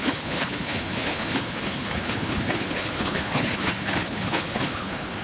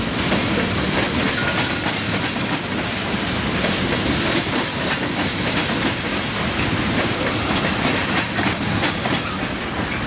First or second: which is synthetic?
first